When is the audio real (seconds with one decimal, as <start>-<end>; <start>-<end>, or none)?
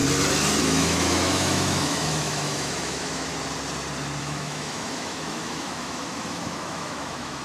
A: 0.0-0.6; 3.3-4.2